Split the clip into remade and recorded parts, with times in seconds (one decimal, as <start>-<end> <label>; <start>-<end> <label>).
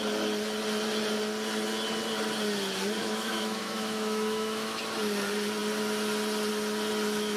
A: 0.0-3.0 recorded; 3.0-4.8 remade; 4.8-7.4 recorded